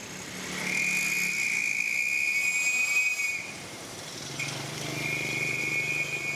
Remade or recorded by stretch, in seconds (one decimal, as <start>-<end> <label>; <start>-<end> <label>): 0.0-3.1 recorded; 3.1-5.6 remade; 5.6-6.4 recorded